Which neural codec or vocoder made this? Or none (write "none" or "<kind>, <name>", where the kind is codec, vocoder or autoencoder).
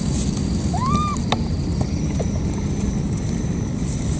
none